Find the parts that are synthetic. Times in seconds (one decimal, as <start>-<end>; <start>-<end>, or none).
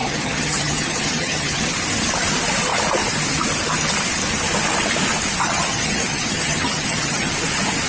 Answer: 0.0-1.7; 5.4-7.3